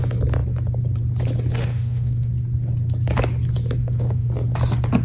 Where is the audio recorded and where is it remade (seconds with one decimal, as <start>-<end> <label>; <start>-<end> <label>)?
0.0-1.6 recorded; 1.6-2.3 remade; 2.3-3.8 recorded; 3.8-4.3 remade; 4.3-5.0 recorded